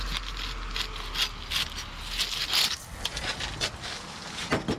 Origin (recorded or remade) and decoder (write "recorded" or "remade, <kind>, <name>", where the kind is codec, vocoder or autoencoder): recorded